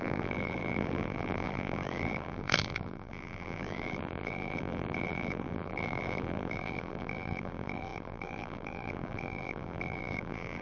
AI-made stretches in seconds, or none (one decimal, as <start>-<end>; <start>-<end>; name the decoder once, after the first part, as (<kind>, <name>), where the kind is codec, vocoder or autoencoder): 0.0-10.6 (vocoder, BigVGAN v2)